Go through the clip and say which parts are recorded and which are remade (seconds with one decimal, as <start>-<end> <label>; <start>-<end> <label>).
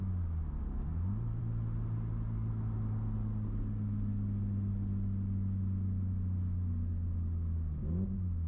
0.0-8.5 recorded